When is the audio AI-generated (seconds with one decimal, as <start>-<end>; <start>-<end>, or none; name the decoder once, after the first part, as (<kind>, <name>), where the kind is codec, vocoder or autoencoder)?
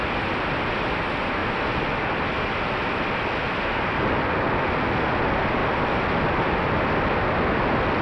1.4-2.5 (vocoder, BigVGAN v2); 5.6-7.0